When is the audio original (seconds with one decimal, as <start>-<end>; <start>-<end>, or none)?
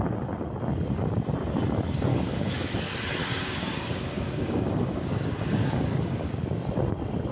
0.0-2.1; 2.8-3.2; 6.4-7.3